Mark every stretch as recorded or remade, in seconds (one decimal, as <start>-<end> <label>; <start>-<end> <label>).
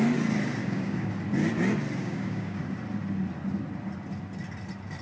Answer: 0.0-0.6 recorded; 0.6-1.1 remade; 1.1-2.0 recorded; 2.0-2.6 remade; 2.6-5.0 recorded